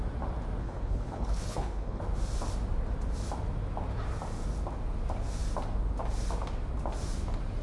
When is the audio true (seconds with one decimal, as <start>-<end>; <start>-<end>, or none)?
0.0-0.6; 2.0-7.6